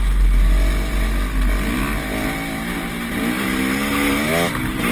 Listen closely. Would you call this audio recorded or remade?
recorded